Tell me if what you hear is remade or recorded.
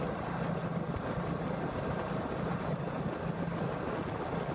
recorded